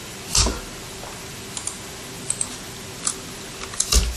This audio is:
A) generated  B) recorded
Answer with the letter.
B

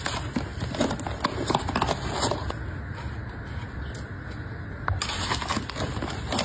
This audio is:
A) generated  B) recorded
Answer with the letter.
B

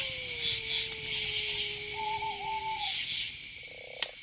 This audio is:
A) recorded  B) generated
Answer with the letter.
A